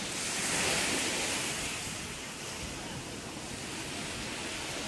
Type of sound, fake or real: real